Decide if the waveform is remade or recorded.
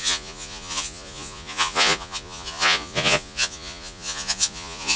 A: remade